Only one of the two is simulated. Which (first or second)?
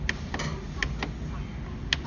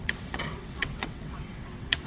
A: second